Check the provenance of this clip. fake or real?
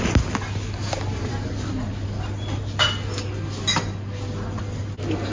real